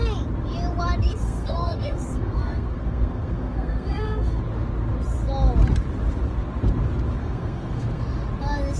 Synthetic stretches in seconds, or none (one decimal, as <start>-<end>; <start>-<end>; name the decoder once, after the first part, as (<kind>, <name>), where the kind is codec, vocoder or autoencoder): 1.0-4.4 (codec, SNAC); 7.2-8.0